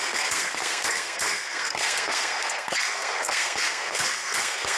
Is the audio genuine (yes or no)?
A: no